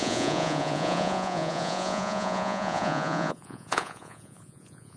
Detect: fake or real fake